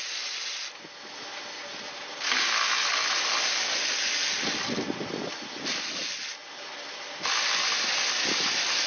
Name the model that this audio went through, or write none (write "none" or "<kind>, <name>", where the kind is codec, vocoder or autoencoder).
none